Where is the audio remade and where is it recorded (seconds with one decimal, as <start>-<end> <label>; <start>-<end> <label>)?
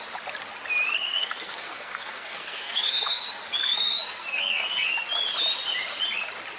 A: 0.0-0.9 recorded; 0.9-4.9 remade; 4.9-6.6 recorded